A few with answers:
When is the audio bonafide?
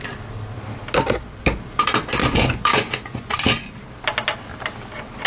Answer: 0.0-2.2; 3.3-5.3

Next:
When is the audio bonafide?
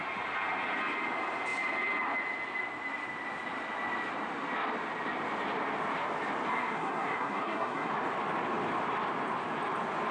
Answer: 0.0-6.5; 7.9-10.1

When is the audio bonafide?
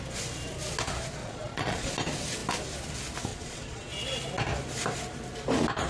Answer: 0.0-1.2; 1.9-3.3; 3.9-5.9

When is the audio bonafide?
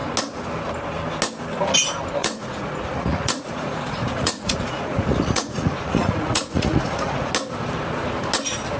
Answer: 0.0-2.2; 7.3-8.8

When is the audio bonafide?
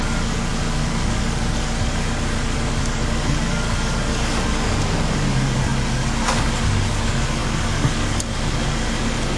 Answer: none